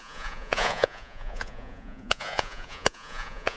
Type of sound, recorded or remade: remade